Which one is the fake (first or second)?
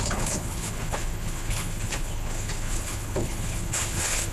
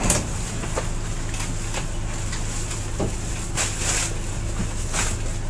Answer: first